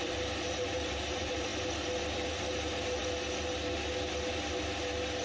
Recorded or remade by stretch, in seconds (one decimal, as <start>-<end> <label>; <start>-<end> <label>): 0.0-1.5 remade; 1.5-2.3 recorded; 2.3-3.0 remade; 3.0-5.2 recorded